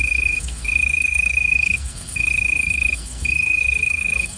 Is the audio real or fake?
fake